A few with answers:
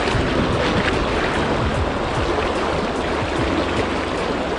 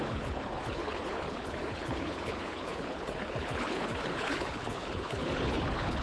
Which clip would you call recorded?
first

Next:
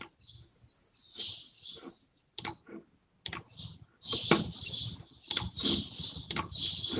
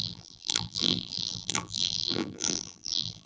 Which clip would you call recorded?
first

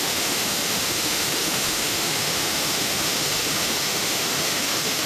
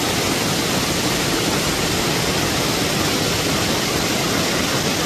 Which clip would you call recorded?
second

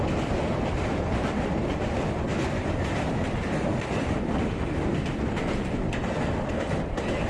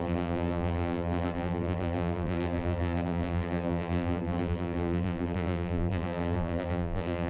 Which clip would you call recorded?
first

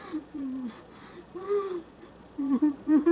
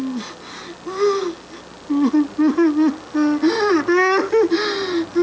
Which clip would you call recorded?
second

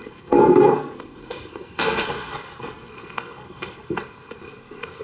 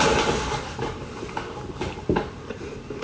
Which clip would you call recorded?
second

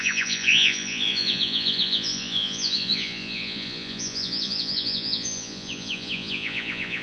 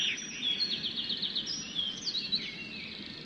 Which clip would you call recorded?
second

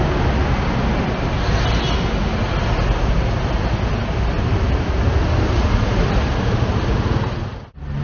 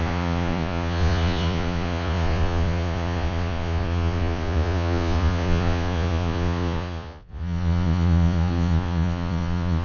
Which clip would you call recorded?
first